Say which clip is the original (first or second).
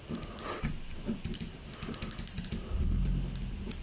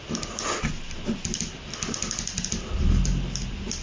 second